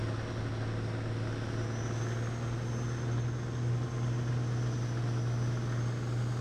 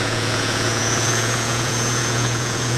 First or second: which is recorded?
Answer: first